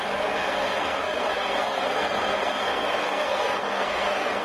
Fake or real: fake